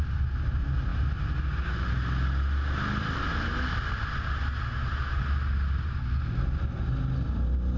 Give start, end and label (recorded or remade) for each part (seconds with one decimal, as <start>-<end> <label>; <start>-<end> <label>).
0.0-7.8 recorded